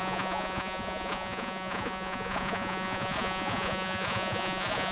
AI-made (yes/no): yes